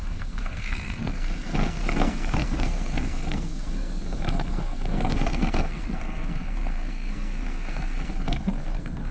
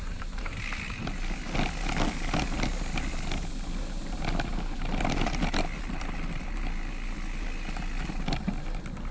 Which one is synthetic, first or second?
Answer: first